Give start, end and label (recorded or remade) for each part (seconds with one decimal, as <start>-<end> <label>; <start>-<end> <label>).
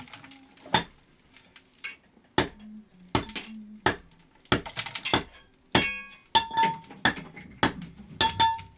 0.0-8.8 recorded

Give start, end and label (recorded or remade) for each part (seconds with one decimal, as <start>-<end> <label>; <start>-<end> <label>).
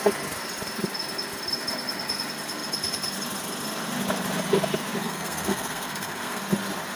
0.0-5.0 recorded; 5.0-6.4 remade; 6.4-7.0 recorded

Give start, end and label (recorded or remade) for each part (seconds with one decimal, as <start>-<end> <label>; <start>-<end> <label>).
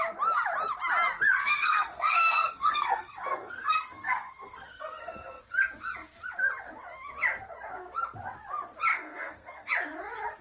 0.0-1.4 recorded; 1.4-5.4 remade; 5.4-8.9 recorded; 8.9-9.7 remade; 9.7-10.4 recorded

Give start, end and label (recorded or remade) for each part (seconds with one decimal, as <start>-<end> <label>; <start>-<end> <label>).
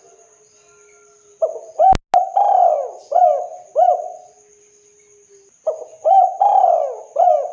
0.0-7.5 recorded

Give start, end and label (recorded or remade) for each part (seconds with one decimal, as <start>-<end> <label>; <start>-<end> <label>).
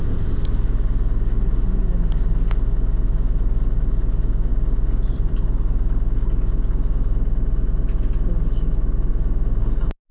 0.0-4.5 recorded; 4.5-5.3 remade; 5.3-10.1 recorded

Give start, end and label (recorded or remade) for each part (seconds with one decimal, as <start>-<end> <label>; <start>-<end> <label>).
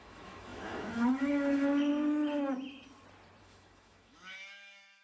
0.0-1.9 remade; 1.9-3.4 recorded; 3.4-5.0 remade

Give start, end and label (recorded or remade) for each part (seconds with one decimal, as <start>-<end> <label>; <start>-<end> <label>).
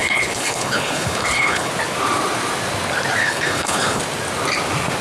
0.0-1.7 remade; 1.7-3.2 recorded; 3.2-4.0 remade; 4.0-5.0 recorded